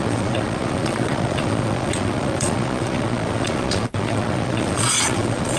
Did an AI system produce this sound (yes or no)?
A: yes